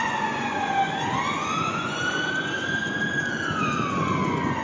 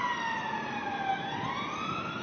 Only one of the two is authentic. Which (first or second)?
second